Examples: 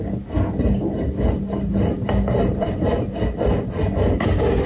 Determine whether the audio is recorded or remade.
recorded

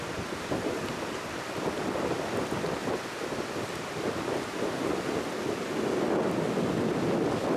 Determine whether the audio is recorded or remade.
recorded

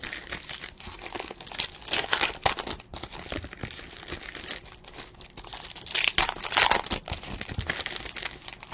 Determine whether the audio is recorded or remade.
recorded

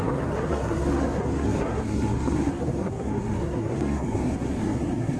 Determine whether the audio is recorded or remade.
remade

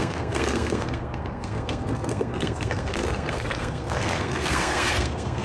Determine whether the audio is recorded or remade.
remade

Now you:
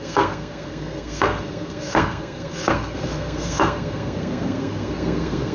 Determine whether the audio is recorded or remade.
remade